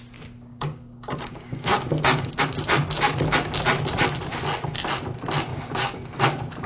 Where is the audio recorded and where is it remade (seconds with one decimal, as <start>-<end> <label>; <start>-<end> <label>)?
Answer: 0.0-0.5 recorded; 0.5-2.4 remade; 2.4-5.5 recorded; 5.5-6.2 remade; 6.2-6.7 recorded